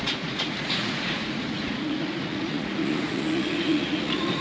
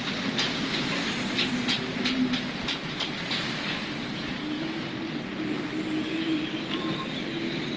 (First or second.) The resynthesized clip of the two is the first